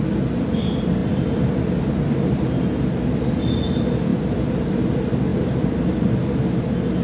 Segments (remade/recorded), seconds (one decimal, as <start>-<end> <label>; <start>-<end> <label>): 0.0-1.0 recorded; 1.0-2.6 remade; 2.6-4.1 recorded; 4.1-4.6 remade; 4.6-7.0 recorded

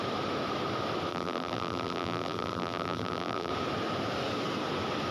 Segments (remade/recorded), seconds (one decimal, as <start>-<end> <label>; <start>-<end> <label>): 0.0-1.1 recorded; 1.1-3.5 remade; 3.5-5.1 recorded